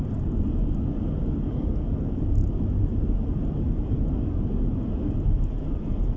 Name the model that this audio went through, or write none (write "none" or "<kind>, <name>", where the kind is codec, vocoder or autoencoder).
none